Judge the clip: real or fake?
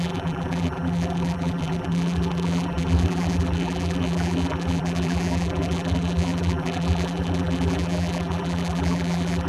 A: fake